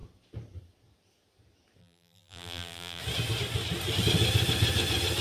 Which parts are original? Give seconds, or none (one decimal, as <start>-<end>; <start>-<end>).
0.0-1.8; 3.0-5.2